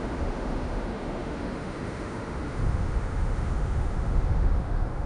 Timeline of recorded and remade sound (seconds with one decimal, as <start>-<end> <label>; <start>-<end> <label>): 0.0-5.1 remade